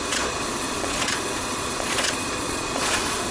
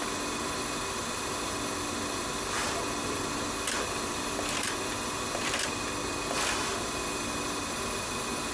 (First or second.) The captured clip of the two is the second